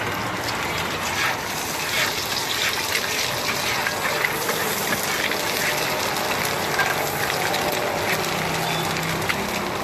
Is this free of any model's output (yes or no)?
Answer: yes